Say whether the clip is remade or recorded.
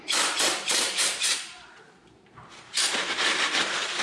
remade